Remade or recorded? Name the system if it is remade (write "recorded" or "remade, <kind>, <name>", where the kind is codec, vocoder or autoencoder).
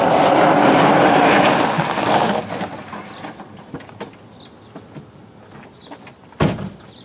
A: recorded